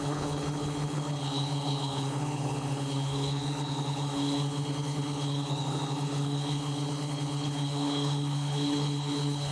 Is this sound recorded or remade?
remade